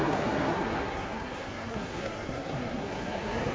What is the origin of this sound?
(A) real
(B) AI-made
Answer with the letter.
B